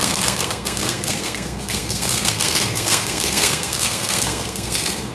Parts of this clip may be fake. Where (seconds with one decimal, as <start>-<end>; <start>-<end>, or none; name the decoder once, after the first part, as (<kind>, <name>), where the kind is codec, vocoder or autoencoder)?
0.0-5.1 (codec, SNAC)